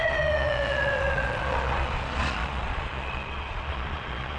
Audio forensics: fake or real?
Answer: fake